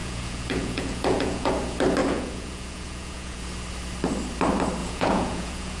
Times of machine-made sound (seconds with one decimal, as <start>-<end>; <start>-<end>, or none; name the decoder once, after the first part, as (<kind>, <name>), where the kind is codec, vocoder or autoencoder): 0.0-1.5 (vocoder, Vocos); 2.0-3.4; 4.8-5.8